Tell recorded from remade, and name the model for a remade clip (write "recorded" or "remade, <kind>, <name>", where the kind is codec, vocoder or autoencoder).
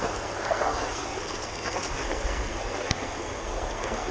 remade, codec, SNAC